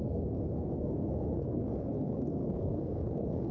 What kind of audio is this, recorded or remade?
remade